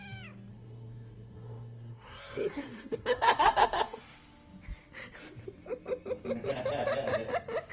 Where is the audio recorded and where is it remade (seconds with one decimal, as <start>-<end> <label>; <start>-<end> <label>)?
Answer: 0.0-0.5 recorded; 0.5-4.0 remade; 4.0-7.7 recorded